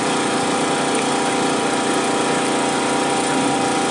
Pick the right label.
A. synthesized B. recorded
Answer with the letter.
B